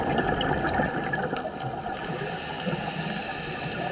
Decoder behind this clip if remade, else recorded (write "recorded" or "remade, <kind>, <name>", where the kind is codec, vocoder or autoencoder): recorded